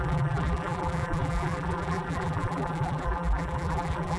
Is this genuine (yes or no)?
no